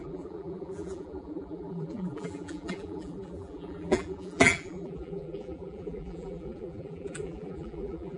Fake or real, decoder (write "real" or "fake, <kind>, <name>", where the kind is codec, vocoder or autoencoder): fake, vocoder, BigVGAN v2